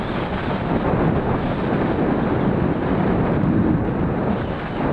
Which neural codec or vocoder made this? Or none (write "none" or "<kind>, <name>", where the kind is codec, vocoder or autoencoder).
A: none